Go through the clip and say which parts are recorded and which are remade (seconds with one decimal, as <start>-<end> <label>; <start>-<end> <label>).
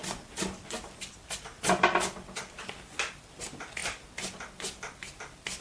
0.0-5.6 recorded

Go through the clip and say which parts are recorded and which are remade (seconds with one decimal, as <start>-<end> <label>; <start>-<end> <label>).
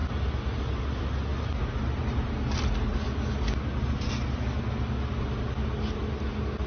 0.0-6.7 recorded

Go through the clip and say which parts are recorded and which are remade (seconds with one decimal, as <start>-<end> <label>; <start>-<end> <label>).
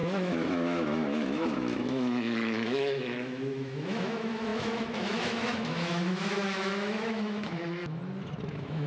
0.0-8.0 remade; 8.0-8.5 recorded; 8.5-8.9 remade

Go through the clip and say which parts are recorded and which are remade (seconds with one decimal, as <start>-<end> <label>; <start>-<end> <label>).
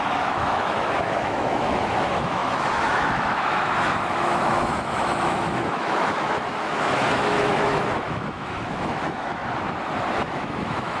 0.0-9.4 remade; 9.4-10.2 recorded; 10.2-11.0 remade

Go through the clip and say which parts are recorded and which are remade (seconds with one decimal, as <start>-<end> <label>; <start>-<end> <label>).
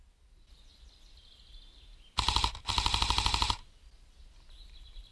0.0-5.1 recorded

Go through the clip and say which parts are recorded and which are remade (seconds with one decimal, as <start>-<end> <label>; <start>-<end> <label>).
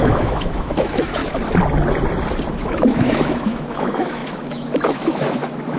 0.0-1.2 remade; 1.2-2.5 recorded; 2.5-5.8 remade